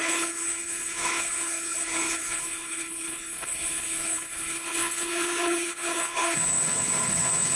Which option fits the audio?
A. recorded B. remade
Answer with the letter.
B